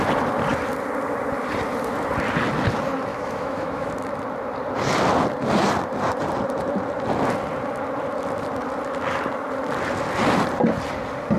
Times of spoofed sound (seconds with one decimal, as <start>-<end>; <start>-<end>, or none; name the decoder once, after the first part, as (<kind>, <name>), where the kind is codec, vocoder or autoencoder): 3.1-3.9 (autoencoder, DAC-VAE)